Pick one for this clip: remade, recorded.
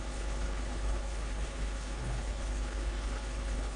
remade